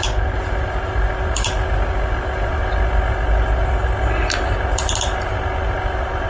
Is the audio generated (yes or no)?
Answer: no